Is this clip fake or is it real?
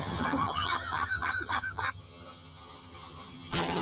fake